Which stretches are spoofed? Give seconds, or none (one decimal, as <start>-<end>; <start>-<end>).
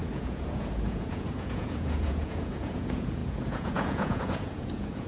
0.0-5.1